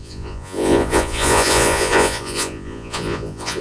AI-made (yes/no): yes